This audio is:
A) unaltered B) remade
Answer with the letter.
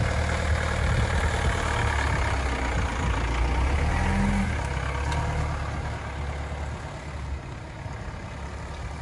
A